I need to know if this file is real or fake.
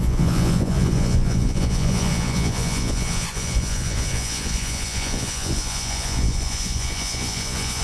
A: fake